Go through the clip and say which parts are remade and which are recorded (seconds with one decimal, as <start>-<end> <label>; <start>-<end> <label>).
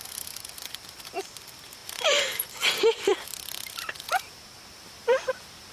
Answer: 0.0-5.7 remade